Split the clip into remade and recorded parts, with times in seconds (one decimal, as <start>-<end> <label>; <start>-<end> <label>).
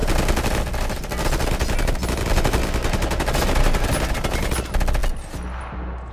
0.0-6.1 recorded